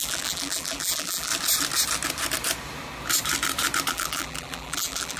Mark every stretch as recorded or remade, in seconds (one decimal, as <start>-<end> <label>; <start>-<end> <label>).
0.0-1.3 remade; 1.3-3.9 recorded; 3.9-5.2 remade